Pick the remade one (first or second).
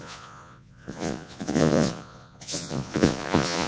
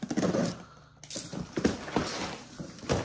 first